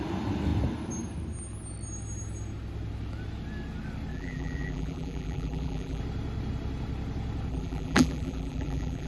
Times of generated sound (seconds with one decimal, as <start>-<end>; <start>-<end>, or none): 4.1-6.0; 7.5-9.1